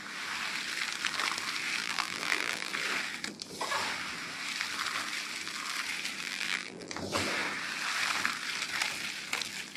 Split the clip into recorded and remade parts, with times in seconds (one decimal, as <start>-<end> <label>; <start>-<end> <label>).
0.0-1.8 recorded; 1.8-2.7 remade; 2.7-6.2 recorded; 6.2-6.9 remade; 6.9-9.8 recorded